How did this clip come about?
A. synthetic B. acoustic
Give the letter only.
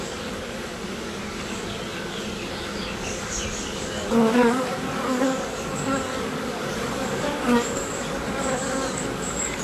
A